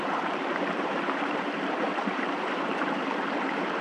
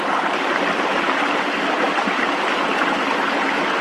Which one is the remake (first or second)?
first